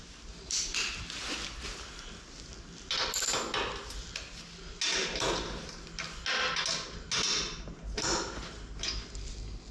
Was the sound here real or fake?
real